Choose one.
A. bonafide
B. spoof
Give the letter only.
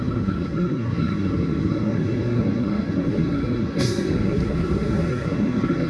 B